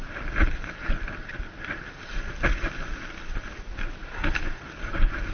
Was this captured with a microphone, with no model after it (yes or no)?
yes